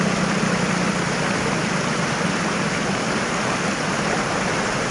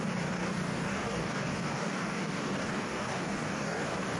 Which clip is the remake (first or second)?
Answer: second